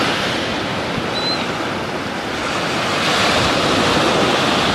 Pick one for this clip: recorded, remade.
recorded